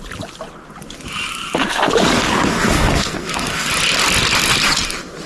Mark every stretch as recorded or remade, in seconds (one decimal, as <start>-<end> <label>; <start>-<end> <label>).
0.0-1.3 recorded; 1.3-1.9 remade; 1.9-2.5 recorded; 2.5-3.7 remade; 3.7-5.3 recorded